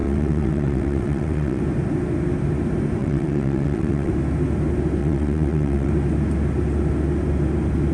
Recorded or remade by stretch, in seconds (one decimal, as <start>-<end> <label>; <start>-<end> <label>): 0.0-1.6 remade; 1.6-3.0 recorded; 3.0-4.1 remade; 4.1-5.0 recorded; 5.0-5.9 remade; 5.9-7.9 recorded